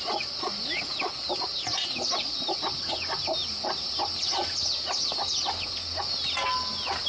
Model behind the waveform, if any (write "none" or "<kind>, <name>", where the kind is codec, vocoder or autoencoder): none